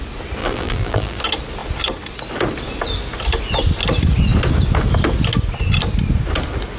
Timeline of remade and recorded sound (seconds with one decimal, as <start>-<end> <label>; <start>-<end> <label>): 0.0-0.4 recorded; 0.4-1.2 remade; 1.2-6.8 recorded

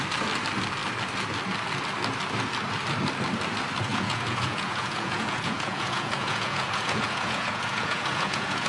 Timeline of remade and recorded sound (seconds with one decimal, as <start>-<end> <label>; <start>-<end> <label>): 0.0-3.9 recorded; 3.9-8.7 remade